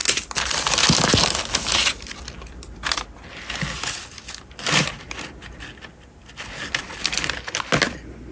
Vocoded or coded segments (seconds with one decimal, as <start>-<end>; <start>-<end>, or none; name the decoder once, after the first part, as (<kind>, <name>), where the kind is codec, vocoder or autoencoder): none